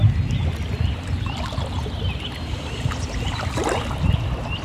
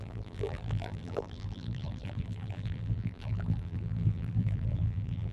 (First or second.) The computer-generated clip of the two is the second